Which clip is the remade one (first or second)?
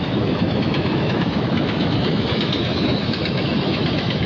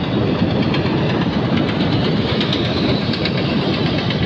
first